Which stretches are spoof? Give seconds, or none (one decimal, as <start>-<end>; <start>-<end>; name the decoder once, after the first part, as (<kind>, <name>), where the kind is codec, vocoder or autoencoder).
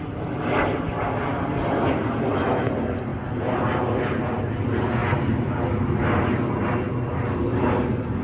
none